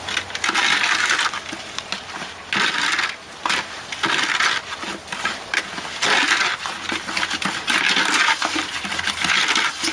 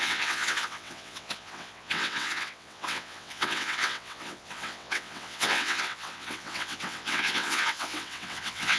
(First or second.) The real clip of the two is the first